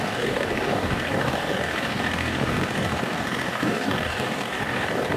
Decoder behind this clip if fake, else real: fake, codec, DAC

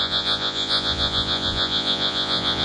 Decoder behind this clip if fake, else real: fake, vocoder, Vocos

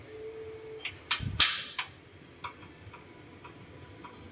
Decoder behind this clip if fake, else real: real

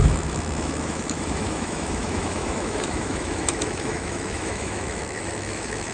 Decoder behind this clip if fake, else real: fake, autoencoder, DAC-VAE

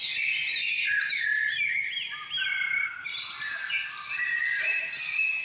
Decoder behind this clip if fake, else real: real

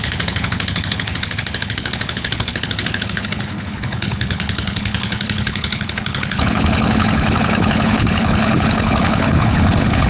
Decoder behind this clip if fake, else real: fake, codec, HILCodec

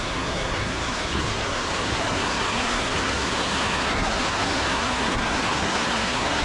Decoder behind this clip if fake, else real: fake, codec, SNAC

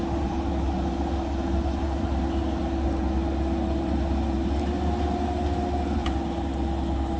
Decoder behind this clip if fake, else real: real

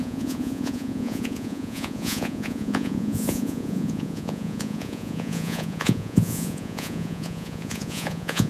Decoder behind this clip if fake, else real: fake, vocoder, Vocos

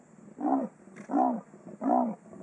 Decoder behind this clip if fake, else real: real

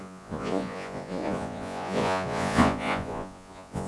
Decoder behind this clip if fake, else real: fake, vocoder, Vocos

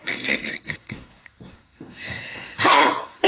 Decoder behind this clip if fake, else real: fake, codec, SNAC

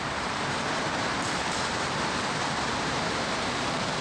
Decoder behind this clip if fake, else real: fake, vocoder, BigVGAN v2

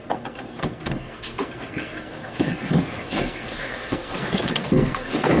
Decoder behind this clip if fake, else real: fake, codec, SNAC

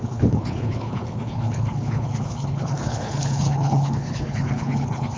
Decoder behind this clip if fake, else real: fake, codec, HILCodec